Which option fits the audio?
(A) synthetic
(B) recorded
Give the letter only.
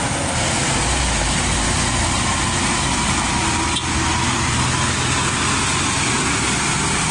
B